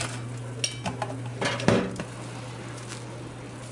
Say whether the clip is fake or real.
real